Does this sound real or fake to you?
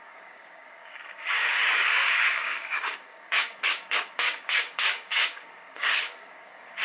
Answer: fake